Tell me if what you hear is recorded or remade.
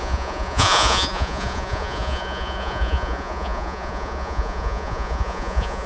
remade